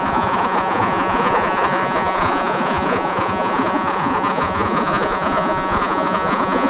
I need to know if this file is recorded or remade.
remade